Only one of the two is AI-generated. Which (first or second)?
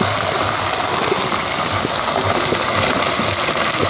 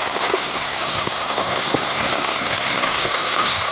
second